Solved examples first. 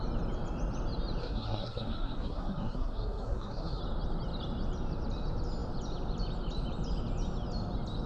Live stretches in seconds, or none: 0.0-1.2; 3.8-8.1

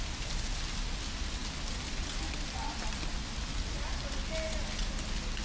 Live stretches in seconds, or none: 0.0-5.4

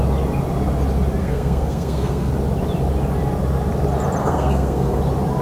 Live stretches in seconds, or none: 0.0-1.2; 2.3-4.2; 5.0-5.4

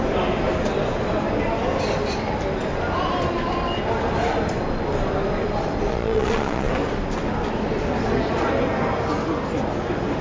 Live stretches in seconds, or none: 0.0-5.9; 6.7-10.2